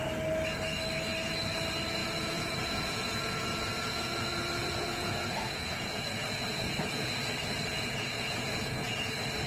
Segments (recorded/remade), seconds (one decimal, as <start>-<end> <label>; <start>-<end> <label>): 0.0-2.0 recorded; 2.0-7.1 remade; 7.1-7.7 recorded; 7.7-9.1 remade; 9.1-9.5 recorded